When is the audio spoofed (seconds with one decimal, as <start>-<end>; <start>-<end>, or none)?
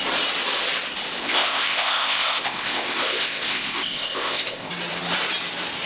1.2-4.7